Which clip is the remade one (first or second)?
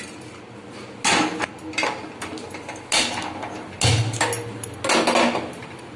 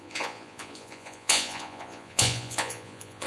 second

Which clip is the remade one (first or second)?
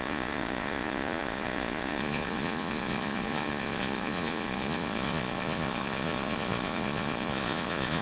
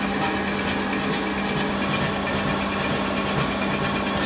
first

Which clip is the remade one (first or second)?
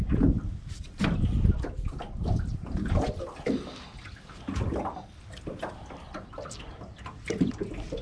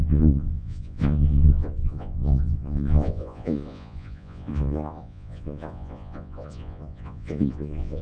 second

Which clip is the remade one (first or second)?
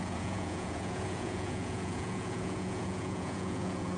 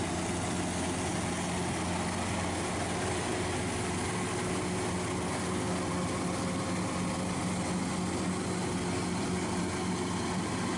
first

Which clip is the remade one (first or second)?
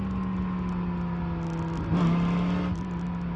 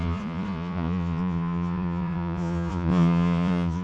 second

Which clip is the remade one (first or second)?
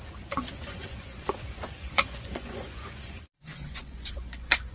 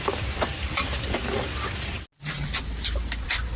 first